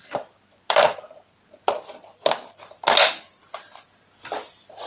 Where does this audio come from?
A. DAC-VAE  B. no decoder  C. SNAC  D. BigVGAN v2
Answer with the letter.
B